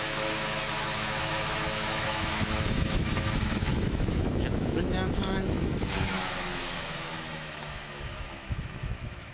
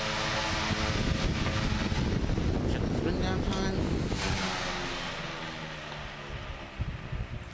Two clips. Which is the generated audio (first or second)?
first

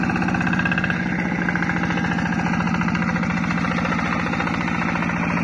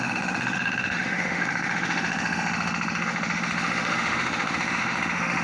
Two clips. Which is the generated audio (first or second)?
second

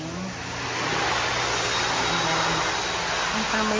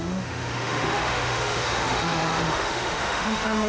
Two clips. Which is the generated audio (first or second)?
second